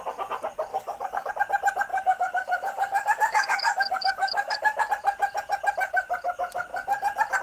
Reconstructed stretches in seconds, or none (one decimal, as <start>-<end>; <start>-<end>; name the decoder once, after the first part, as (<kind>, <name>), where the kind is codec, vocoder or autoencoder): 0.7-1.3 (codec, DAC); 1.9-4.9